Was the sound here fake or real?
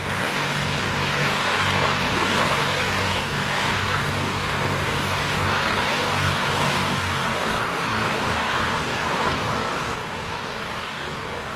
fake